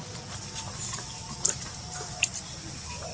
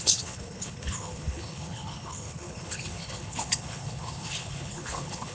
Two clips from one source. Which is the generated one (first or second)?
second